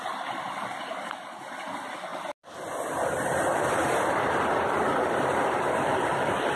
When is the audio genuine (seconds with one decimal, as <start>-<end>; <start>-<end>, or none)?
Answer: 0.0-6.6